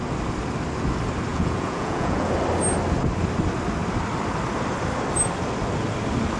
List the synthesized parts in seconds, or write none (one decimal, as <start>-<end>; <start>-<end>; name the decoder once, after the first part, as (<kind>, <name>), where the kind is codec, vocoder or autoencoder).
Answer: 1.3-2.3 (vocoder, Vocos)